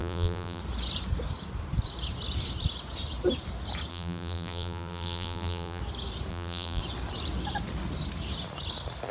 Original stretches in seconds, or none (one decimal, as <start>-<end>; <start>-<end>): 0.6-3.9; 5.8-6.3; 6.8-9.1